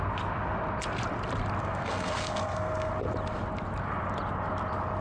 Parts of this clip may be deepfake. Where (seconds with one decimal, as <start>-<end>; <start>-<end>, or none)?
1.6-2.9